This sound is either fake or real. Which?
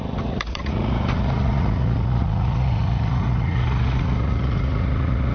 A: fake